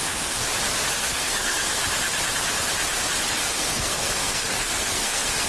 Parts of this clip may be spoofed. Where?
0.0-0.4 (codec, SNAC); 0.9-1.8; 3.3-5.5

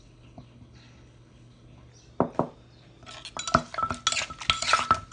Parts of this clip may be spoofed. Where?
0.0-1.9 (codec, HILCodec)

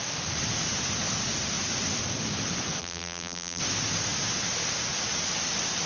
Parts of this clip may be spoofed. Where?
2.8-3.6 (vocoder, BigVGAN v2)